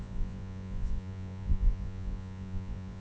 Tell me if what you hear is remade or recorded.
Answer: remade